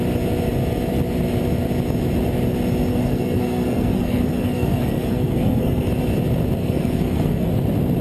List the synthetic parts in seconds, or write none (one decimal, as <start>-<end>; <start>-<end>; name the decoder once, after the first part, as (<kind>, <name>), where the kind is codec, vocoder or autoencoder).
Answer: 2.9-5.9 (codec, SNAC); 6.6-7.5